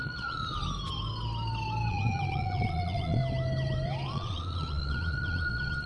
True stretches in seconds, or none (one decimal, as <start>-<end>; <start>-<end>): 0.4-1.9; 3.2-4.1